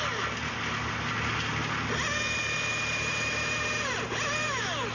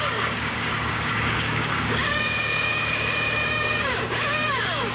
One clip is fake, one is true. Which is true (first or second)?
first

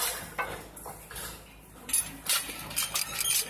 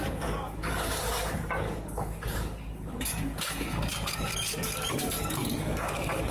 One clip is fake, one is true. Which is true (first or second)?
first